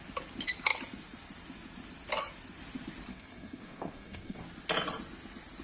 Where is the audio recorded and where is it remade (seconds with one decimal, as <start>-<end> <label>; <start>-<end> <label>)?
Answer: 0.0-3.1 recorded; 3.1-4.4 remade; 4.4-5.6 recorded